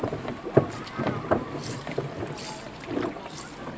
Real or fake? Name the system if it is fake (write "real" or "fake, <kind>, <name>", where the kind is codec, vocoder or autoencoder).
real